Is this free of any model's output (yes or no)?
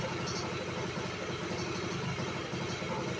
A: yes